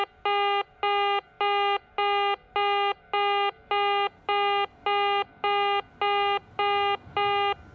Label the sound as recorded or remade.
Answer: recorded